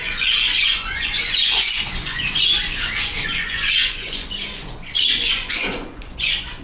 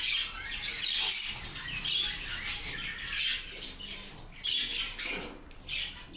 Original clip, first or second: second